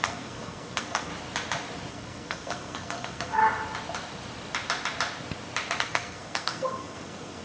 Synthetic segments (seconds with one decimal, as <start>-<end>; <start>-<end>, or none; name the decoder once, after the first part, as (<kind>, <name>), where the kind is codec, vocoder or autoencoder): 0.0-1.1 (codec, SNAC); 1.9-3.4; 5.8-7.4